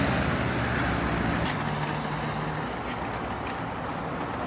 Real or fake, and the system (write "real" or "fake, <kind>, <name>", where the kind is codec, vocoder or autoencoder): real